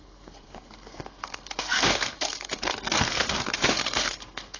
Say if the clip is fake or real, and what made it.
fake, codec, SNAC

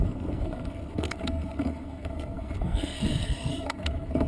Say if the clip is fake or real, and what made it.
fake, codec, SNAC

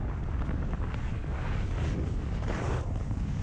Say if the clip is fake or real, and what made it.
fake, codec, DAC